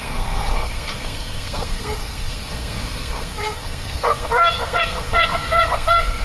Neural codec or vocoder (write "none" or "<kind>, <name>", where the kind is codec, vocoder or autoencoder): codec, SNAC